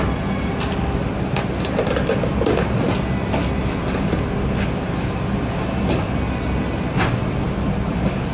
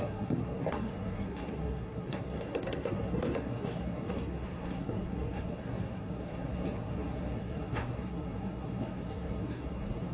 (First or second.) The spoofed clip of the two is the second